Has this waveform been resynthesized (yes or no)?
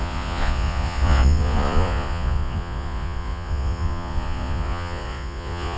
yes